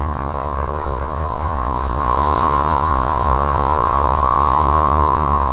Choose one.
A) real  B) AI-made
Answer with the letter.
B